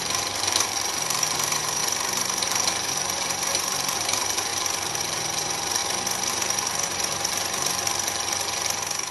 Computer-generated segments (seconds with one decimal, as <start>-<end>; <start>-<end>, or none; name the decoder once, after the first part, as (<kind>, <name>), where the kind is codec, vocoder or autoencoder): 0.0-1.8 (vocoder, BigVGAN v2); 2.4-4.5; 5.0-5.8; 6.3-9.1